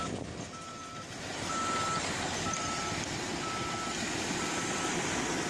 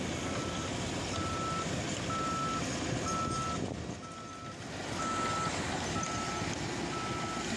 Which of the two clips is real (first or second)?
second